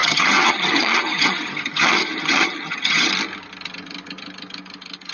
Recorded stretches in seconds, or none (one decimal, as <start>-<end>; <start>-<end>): 3.1-5.1